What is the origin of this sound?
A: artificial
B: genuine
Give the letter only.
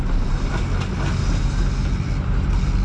B